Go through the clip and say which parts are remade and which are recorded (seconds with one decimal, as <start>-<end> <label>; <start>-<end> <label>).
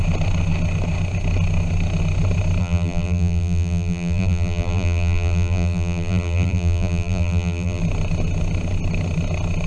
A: 0.0-2.6 recorded; 2.6-7.8 remade; 7.8-9.7 recorded